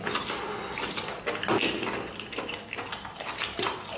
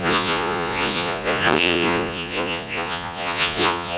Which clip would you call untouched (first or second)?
first